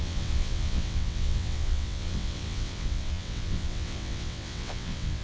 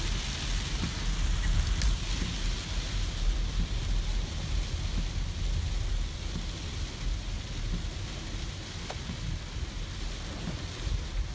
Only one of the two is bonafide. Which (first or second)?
second